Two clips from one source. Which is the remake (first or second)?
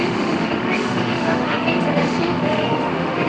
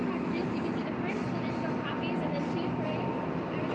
first